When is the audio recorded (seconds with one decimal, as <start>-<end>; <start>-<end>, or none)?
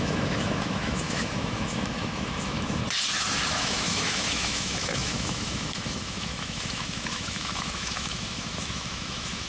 2.8-3.5